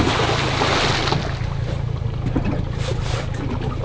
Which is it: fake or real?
real